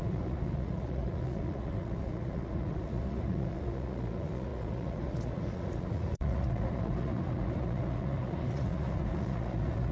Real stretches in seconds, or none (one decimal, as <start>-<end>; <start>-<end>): none